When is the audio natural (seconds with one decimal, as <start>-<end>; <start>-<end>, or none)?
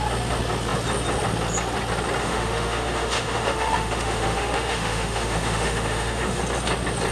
0.0-2.2; 6.4-7.1